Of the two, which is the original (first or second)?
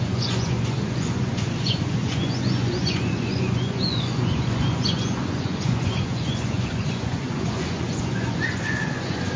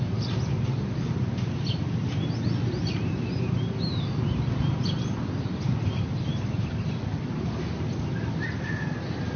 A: second